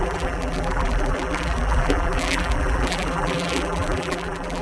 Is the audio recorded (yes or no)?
no